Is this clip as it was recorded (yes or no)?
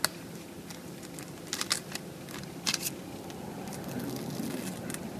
yes